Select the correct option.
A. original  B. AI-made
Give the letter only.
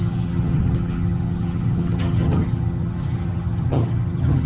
B